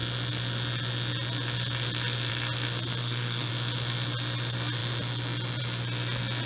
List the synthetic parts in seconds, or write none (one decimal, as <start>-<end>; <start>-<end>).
3.0-3.5